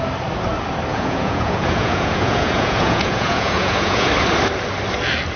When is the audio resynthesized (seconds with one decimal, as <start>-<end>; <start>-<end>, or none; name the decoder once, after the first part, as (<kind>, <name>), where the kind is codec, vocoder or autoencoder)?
0.9-4.1 (vocoder, Vocos)